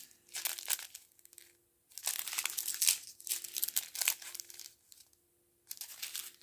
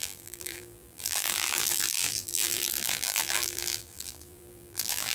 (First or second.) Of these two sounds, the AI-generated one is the second